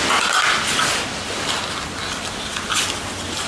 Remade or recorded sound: recorded